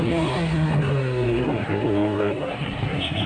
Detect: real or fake fake